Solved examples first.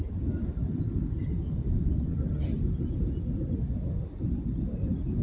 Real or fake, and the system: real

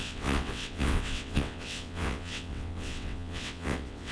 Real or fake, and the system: fake, vocoder, WaveNeXt